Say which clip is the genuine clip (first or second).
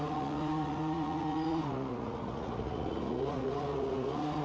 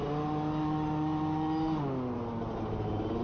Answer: second